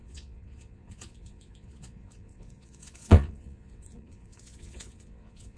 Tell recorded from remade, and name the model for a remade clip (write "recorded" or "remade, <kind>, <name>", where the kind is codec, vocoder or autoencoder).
remade, vocoder, Vocos